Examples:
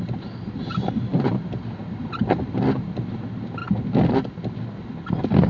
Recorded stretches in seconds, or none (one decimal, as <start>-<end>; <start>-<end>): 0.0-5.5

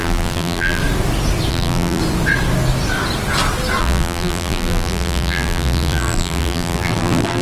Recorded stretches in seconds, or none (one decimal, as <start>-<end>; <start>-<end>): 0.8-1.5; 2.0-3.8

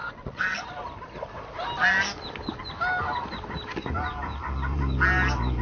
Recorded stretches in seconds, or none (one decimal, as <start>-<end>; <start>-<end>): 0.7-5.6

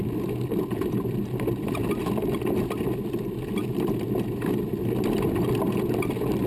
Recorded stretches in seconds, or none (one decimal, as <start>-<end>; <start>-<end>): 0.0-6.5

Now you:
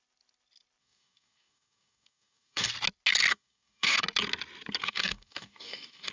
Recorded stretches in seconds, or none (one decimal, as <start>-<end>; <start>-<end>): 0.0-0.8; 2.7-3.3; 4.0-4.8

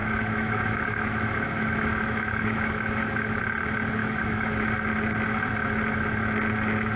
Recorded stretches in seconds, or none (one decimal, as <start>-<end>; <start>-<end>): 3.4-4.0; 4.6-7.0

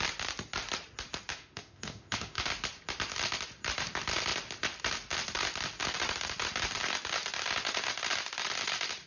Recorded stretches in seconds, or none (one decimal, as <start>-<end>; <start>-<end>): 0.0-1.3; 2.5-9.1

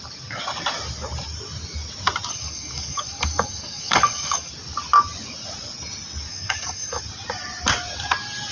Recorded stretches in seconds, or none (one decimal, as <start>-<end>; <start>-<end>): 0.0-2.3; 4.5-6.3; 7.0-8.5